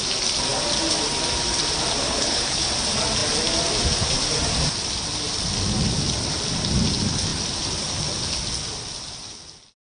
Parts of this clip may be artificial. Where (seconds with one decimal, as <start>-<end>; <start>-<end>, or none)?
2.0-2.7